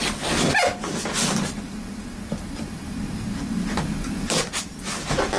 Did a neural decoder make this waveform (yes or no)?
no